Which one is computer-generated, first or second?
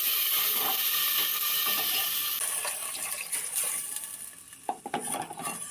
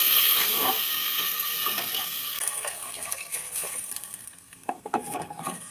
second